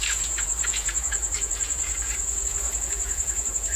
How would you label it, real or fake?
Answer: fake